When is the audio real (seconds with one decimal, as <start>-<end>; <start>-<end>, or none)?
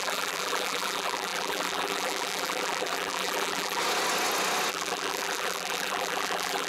3.8-4.7